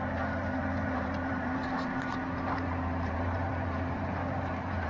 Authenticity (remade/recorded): remade